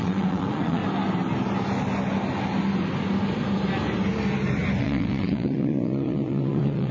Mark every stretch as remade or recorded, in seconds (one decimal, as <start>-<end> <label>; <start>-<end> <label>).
0.0-0.8 remade; 0.8-4.8 recorded; 4.8-6.9 remade